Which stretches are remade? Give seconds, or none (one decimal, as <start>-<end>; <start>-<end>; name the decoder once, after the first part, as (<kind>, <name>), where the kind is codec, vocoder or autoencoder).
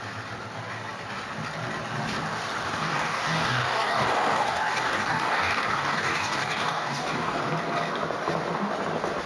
2.8-7.4 (codec, DAC)